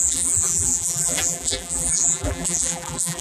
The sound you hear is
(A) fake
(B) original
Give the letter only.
A